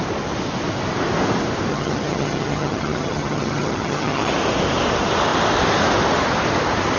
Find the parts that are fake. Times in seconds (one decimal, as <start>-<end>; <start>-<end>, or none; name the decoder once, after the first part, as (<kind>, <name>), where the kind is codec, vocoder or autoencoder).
1.7-4.3 (vocoder, HiFi-GAN)